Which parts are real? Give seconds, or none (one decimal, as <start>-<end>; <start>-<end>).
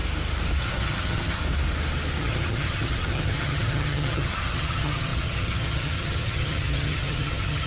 0.0-0.6; 1.4-2.2